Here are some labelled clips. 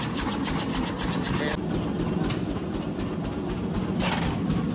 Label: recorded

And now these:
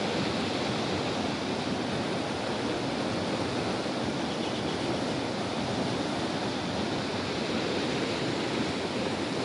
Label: recorded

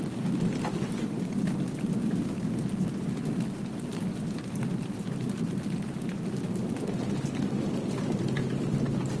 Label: recorded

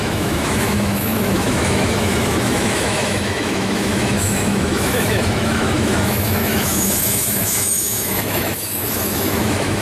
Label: remade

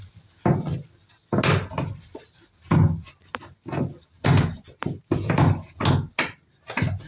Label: recorded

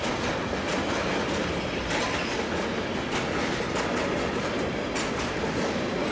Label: recorded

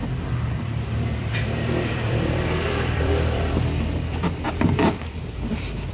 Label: remade